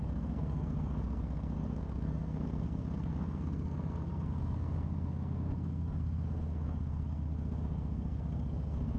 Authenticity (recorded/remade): remade